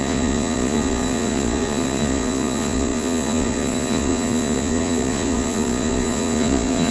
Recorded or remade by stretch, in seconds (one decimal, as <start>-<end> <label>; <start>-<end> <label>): 0.0-6.9 remade